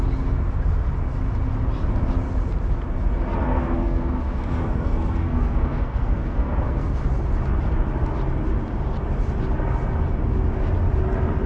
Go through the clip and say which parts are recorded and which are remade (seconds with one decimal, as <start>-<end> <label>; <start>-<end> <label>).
0.0-3.5 recorded; 3.5-7.0 remade; 7.0-11.5 recorded